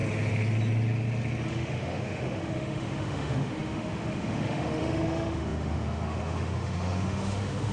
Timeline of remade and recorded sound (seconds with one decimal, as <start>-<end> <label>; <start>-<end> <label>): 0.0-1.5 recorded; 1.5-7.7 remade